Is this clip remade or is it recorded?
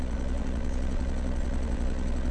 remade